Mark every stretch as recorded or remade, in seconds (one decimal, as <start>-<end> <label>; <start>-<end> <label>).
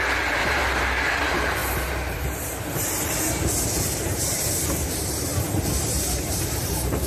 0.0-0.6 remade; 0.6-1.2 recorded; 1.2-5.3 remade; 5.3-6.0 recorded; 6.0-7.1 remade